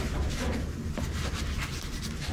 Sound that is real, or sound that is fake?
real